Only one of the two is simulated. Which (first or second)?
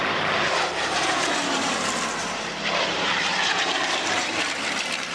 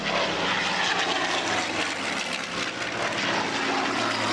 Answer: first